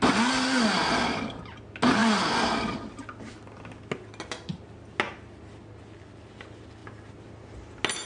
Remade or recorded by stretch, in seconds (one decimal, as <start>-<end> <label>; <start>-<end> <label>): 0.0-8.1 recorded

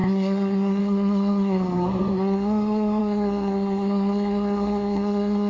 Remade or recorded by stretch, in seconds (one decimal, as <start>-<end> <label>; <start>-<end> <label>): 0.0-5.5 remade

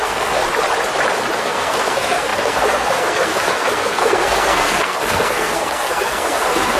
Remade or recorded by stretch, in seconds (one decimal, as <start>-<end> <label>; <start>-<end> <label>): 0.0-0.4 remade; 0.4-1.4 recorded; 1.4-6.8 remade

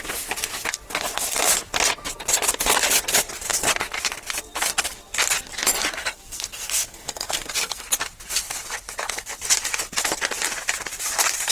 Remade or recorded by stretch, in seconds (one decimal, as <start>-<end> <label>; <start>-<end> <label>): 0.0-6.0 recorded; 6.0-7.8 remade; 7.8-11.5 recorded

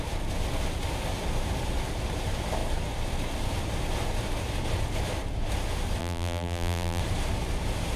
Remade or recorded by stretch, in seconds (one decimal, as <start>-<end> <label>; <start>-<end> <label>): 0.0-6.0 recorded; 6.0-7.0 remade; 7.0-8.0 recorded